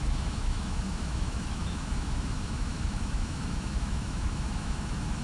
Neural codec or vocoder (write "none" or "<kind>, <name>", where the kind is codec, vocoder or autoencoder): autoencoder, DAC-VAE